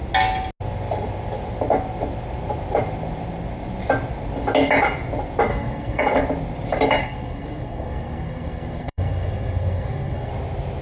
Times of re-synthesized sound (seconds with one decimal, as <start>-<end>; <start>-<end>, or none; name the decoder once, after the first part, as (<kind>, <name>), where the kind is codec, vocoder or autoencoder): 5.5-6.0 (codec, SNAC); 7.0-10.3